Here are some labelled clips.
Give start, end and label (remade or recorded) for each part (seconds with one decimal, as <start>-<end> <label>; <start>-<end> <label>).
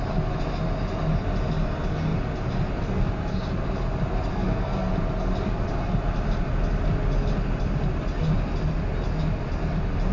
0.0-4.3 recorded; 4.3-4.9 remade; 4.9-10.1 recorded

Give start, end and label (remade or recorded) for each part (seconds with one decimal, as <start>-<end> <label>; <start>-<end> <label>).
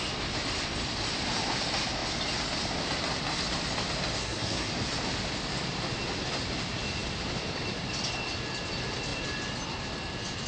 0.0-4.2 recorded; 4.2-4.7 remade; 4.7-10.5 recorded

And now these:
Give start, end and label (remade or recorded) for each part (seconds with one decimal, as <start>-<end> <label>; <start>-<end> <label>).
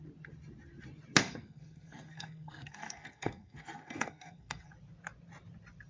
0.0-1.2 recorded; 1.2-4.7 remade; 4.7-5.9 recorded